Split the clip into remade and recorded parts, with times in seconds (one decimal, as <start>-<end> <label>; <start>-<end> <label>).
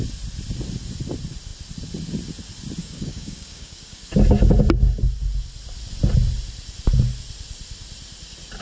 0.0-2.8 recorded; 2.8-4.1 remade; 4.1-8.6 recorded